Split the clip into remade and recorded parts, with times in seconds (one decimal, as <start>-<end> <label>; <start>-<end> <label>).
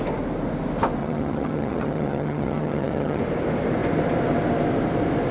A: 0.0-1.0 recorded; 1.0-3.2 remade; 3.2-5.3 recorded